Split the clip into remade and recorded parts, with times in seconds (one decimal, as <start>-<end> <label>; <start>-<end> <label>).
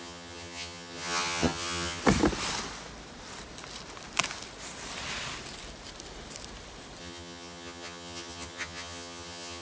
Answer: 0.0-2.0 remade; 2.0-7.0 recorded; 7.0-9.6 remade